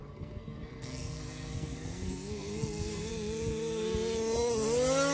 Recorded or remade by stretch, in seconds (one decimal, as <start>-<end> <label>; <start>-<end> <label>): 0.0-3.1 remade; 3.1-5.1 recorded